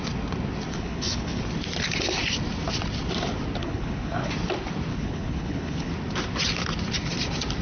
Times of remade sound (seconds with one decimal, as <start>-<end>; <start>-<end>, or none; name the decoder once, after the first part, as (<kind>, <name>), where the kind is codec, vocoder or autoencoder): 0.7-1.4 (codec, HILCodec); 3.6-4.3; 4.9-5.9